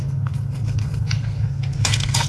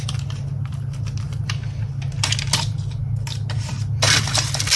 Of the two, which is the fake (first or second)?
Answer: first